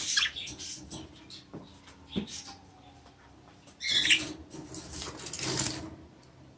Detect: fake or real real